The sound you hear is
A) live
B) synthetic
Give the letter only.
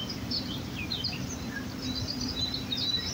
B